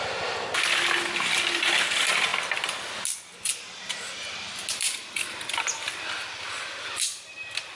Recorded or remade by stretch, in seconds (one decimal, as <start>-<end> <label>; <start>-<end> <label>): 0.0-7.8 recorded